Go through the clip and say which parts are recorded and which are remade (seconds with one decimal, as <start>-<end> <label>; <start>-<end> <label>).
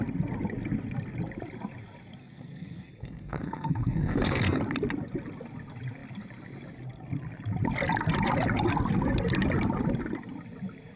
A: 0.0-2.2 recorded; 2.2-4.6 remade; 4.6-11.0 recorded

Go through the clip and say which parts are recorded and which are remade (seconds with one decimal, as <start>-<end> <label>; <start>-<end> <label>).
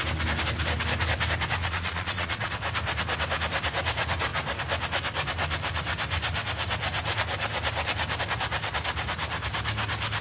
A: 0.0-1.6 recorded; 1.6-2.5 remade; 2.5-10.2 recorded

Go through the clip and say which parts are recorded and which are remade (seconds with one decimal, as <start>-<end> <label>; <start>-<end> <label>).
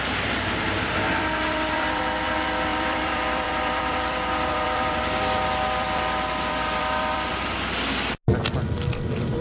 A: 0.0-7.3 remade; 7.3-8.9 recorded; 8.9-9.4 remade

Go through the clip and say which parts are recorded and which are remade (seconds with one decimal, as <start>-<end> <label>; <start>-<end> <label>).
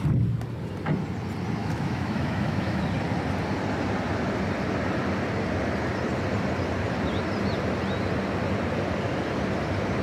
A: 0.0-1.6 recorded; 1.6-2.8 remade; 2.8-10.0 recorded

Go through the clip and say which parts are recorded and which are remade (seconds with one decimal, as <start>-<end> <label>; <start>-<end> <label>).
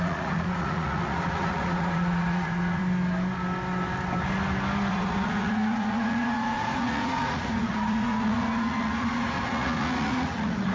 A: 0.0-2.8 remade; 2.8-4.9 recorded; 4.9-10.7 remade